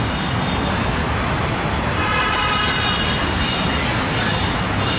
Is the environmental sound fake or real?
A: real